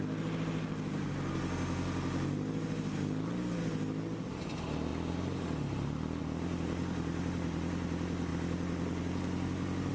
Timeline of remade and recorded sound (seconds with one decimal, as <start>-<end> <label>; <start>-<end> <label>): 0.0-9.9 recorded

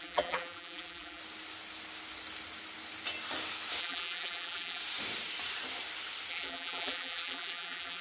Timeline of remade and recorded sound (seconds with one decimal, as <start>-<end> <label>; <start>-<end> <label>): 0.0-1.2 remade; 1.2-3.8 recorded; 3.8-4.8 remade; 4.8-6.3 recorded; 6.3-8.0 remade

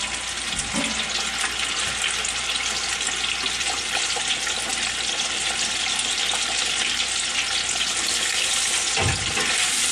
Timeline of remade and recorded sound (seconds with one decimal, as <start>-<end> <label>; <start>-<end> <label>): 0.0-9.9 recorded

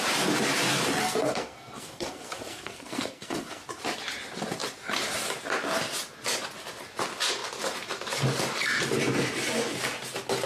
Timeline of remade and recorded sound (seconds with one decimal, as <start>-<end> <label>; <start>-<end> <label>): 0.0-1.0 recorded; 1.0-3.6 remade; 3.6-10.5 recorded